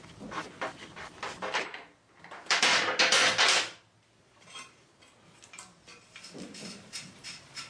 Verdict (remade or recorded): recorded